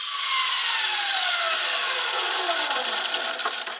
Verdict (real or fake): real